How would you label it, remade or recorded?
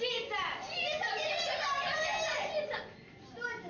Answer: recorded